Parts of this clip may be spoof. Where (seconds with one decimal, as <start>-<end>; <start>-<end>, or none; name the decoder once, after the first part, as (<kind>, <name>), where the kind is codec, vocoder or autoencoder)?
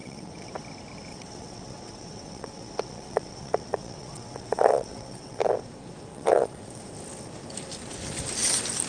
0.0-0.5 (vocoder, WaveNeXt); 1.1-5.4; 6.1-6.8